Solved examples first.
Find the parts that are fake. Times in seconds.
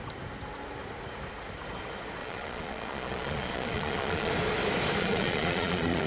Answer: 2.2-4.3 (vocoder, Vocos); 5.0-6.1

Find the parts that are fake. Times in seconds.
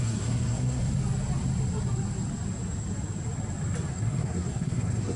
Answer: 0.0-0.8 (codec, SNAC); 3.9-5.2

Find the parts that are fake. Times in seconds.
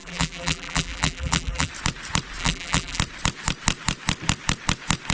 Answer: 0.0-1.7 (vocoder, BigVGAN v2); 2.4-3.0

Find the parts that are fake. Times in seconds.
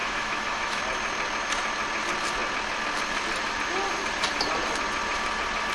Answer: 0.0-0.8 (autoencoder, DAC-VAE)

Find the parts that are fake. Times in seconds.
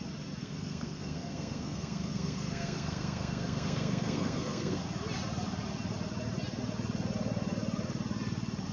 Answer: 0.4-4.8 (codec, SNAC)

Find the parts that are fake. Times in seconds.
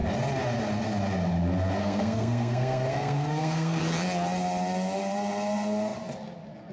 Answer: 1.8-3.8 (codec, SNAC)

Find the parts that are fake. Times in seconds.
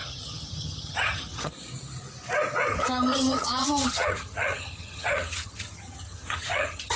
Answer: 0.0-1.5 (vocoder, HiFi-GAN); 2.7-7.0